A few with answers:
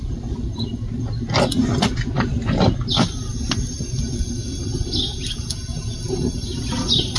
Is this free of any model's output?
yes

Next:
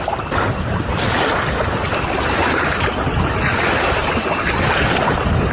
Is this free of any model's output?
yes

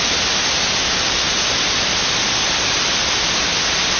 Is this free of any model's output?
yes